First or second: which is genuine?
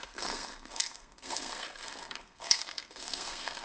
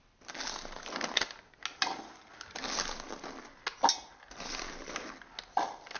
second